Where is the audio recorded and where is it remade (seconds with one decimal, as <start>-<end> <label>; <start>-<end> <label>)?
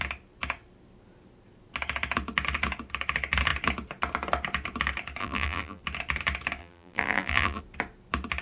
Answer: 0.0-5.2 recorded; 5.2-5.8 remade; 5.8-6.6 recorded; 6.6-7.6 remade; 7.6-8.4 recorded